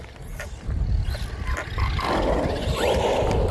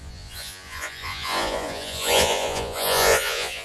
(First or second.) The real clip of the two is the first